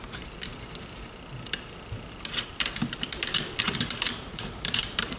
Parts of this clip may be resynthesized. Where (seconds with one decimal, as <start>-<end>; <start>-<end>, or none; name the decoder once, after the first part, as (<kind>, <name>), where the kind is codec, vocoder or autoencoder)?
0.0-0.5 (vocoder, BigVGAN v2); 3.6-5.2